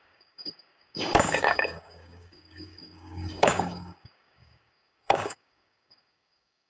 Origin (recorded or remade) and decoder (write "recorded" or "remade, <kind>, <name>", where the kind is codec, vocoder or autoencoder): remade, codec, DAC